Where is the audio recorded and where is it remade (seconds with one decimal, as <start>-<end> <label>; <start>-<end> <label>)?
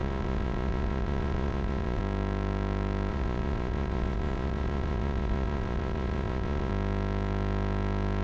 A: 0.0-2.0 remade; 2.0-3.1 recorded; 3.1-6.7 remade; 6.7-8.2 recorded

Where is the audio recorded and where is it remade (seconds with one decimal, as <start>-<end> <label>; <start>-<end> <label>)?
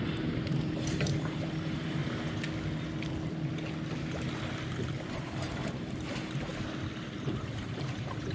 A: 0.0-2.0 remade; 2.0-5.1 recorded; 5.1-6.5 remade; 6.5-7.3 recorded; 7.3-8.3 remade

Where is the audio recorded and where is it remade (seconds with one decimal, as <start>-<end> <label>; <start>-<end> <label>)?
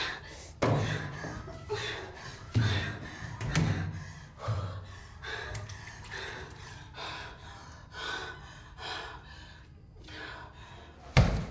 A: 0.0-2.3 remade; 2.3-3.0 recorded; 3.0-3.5 remade; 3.5-6.2 recorded; 6.2-8.2 remade; 8.2-11.0 recorded; 11.0-11.5 remade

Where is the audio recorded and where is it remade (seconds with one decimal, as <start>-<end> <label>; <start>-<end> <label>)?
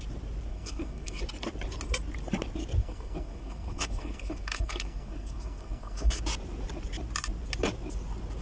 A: 0.0-0.5 recorded; 0.5-1.2 remade; 1.2-2.8 recorded; 2.8-6.2 remade; 6.2-8.4 recorded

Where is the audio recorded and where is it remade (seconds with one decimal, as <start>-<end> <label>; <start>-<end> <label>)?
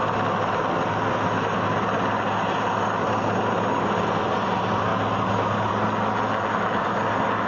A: 0.0-7.5 recorded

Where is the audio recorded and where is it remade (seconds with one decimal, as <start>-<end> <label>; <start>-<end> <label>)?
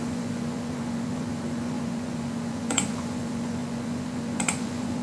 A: 0.0-5.0 remade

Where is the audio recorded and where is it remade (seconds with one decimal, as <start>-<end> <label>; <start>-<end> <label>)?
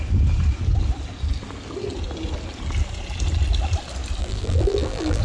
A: 0.0-4.2 recorded; 4.2-5.2 remade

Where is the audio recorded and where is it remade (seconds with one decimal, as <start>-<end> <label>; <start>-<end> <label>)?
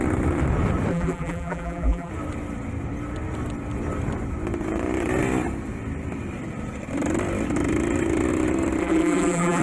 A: 0.0-0.9 recorded; 0.9-2.1 remade; 2.1-8.8 recorded; 8.8-9.6 remade